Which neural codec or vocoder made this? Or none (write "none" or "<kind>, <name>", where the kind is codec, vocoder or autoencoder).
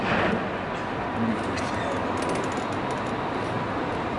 none